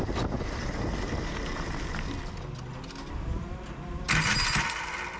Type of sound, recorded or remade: recorded